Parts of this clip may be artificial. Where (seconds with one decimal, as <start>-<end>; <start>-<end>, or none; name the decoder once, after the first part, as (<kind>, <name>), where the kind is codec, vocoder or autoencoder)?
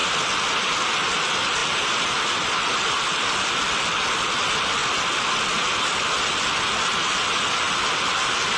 1.6-2.1 (vocoder, BigVGAN v2); 4.8-6.2